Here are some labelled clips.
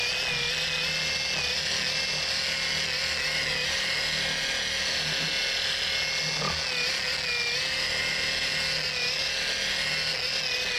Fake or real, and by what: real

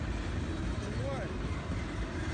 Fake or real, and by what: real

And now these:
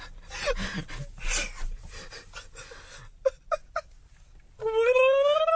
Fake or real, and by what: real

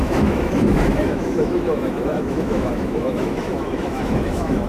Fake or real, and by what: fake, autoencoder, DAC-VAE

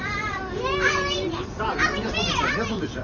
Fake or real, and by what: fake, vocoder, BigVGAN v2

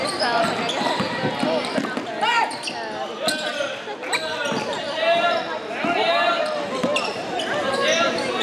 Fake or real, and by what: real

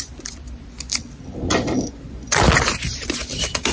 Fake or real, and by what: real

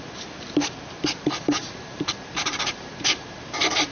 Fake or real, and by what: fake, vocoder, BigVGAN v2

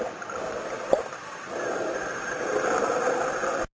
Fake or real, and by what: real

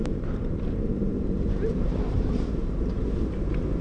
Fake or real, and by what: fake, vocoder, BigVGAN v2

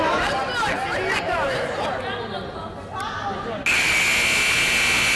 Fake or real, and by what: real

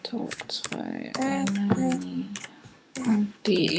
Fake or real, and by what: fake, codec, DAC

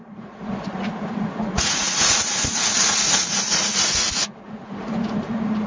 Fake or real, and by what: fake, vocoder, Vocos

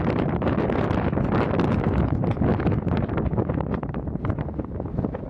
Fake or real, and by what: real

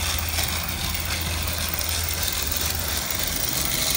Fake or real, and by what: real